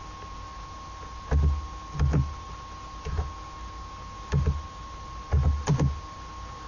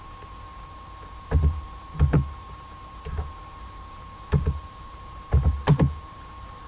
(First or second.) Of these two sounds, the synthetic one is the second